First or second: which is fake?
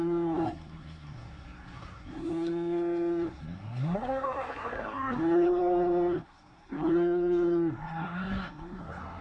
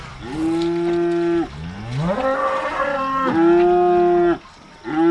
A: first